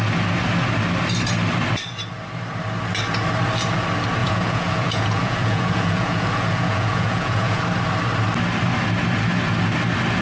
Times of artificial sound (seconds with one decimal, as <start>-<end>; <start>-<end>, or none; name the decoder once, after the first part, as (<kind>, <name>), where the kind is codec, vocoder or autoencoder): 4.2-7.6 (vocoder, Vocos)